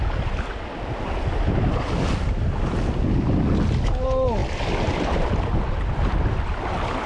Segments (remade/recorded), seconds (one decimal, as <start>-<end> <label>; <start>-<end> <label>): 0.0-7.1 recorded